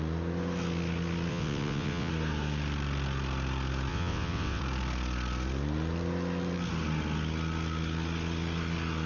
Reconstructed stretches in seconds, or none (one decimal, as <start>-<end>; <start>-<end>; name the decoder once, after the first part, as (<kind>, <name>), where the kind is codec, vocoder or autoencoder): 1.3-2.1 (vocoder, WaveNeXt); 3.9-4.6